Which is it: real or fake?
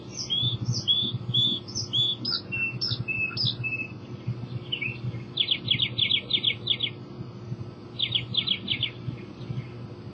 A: real